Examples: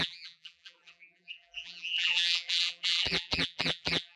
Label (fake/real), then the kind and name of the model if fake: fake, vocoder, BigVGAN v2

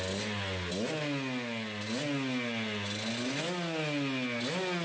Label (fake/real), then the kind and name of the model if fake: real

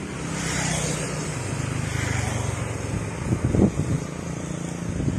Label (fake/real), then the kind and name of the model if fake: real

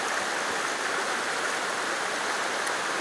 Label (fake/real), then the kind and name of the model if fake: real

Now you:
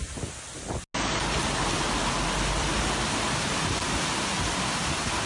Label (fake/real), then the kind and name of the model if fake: real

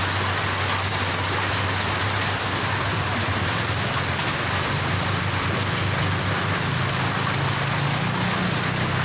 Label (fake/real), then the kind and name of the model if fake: real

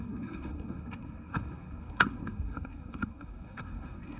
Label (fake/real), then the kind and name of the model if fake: fake, codec, SNAC